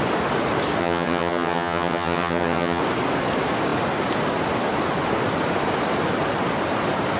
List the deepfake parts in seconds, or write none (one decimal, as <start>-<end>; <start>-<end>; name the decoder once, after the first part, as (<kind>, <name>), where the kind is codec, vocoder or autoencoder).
0.8-2.8 (vocoder, HiFi-GAN)